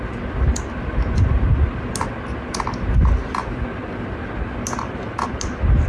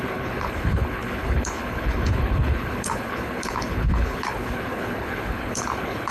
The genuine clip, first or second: first